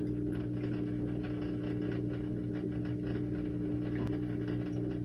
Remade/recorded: recorded